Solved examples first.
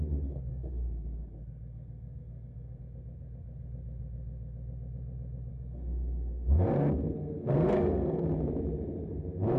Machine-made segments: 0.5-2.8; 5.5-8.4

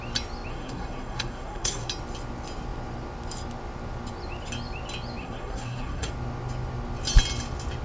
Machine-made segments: 0.5-1.9; 5.2-6.1

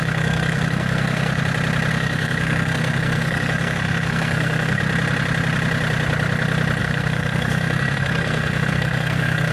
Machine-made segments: 0.0-1.4; 1.9-4.8; 6.8-9.5

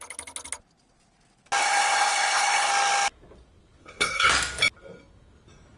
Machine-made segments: 1.6-2.7; 3.8-4.3

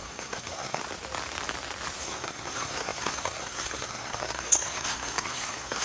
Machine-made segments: 0.0-0.8; 2.0-5.8

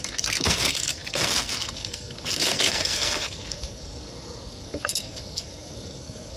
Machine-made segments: 0.0-6.4